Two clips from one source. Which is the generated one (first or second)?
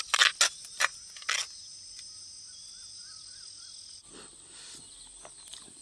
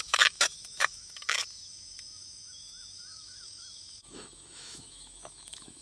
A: second